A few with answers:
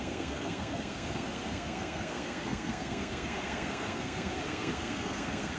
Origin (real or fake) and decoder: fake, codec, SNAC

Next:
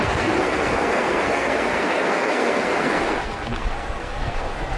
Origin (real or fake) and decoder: fake, codec, SNAC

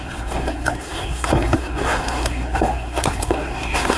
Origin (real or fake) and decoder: fake, codec, SNAC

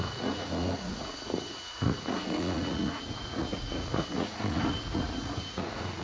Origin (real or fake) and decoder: fake, vocoder, Vocos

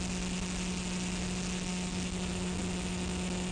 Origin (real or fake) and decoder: real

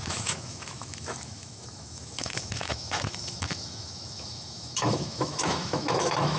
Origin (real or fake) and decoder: fake, autoencoder, DAC-VAE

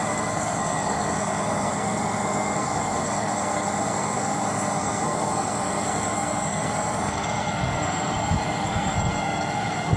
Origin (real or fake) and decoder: fake, codec, SNAC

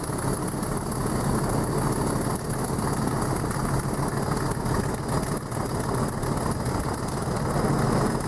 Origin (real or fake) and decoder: real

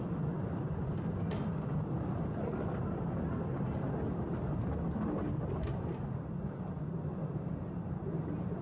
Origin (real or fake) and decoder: real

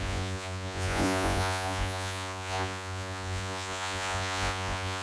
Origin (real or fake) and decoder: fake, vocoder, Vocos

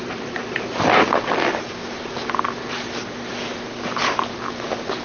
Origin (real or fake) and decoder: real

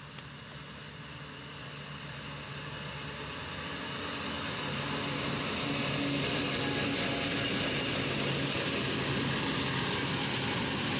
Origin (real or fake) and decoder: real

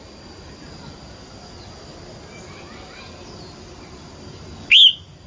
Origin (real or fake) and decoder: real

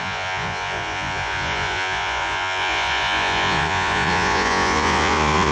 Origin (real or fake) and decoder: fake, vocoder, Vocos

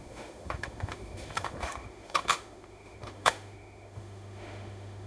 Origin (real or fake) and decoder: fake, autoencoder, DAC-VAE